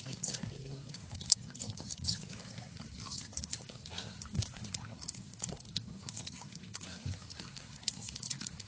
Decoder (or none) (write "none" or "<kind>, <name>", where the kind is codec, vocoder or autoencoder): codec, SNAC